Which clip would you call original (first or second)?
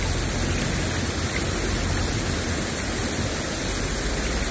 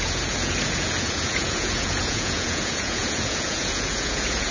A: first